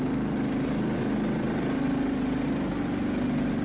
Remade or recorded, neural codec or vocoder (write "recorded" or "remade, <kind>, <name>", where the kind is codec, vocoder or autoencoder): recorded